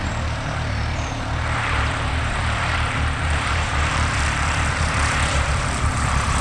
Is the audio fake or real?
fake